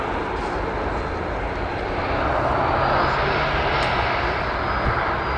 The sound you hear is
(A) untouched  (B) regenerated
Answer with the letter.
A